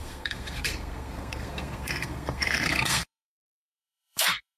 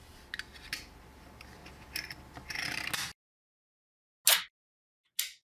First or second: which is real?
second